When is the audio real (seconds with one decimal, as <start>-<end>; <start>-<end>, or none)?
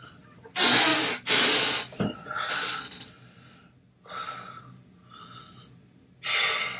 0.0-6.8